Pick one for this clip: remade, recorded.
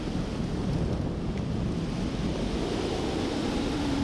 recorded